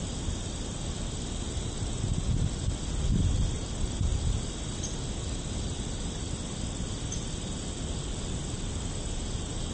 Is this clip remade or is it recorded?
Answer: recorded